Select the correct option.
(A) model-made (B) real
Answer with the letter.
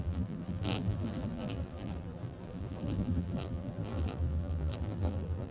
A